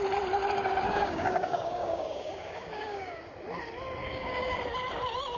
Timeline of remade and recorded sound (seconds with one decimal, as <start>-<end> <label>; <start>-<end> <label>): 0.0-0.8 recorded; 0.8-3.2 remade; 3.2-4.0 recorded; 4.0-4.6 remade; 4.6-5.4 recorded